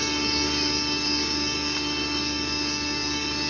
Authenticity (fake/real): fake